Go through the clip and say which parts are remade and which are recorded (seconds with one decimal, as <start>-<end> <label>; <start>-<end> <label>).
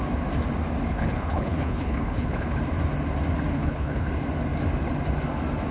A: 0.0-0.9 recorded; 0.9-2.6 remade; 2.6-3.5 recorded; 3.5-4.1 remade; 4.1-5.7 recorded